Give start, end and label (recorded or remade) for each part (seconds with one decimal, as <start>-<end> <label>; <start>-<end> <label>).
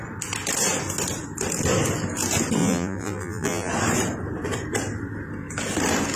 0.0-2.6 recorded; 2.6-3.7 remade; 3.7-6.2 recorded